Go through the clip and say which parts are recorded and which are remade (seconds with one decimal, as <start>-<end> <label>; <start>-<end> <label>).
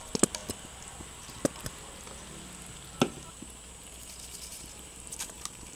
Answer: 0.0-4.5 recorded; 4.5-5.8 remade